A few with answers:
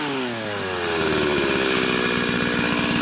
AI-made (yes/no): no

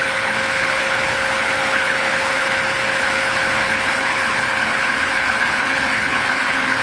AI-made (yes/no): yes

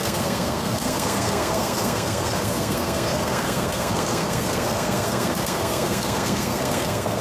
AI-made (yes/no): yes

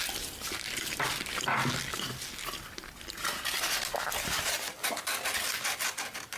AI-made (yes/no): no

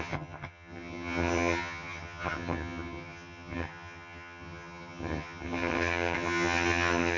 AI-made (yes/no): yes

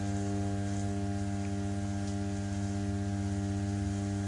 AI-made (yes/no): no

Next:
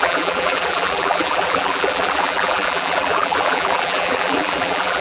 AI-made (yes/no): yes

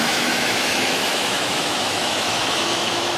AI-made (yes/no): yes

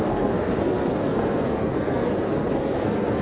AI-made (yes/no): yes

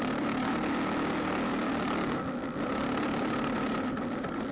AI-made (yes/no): no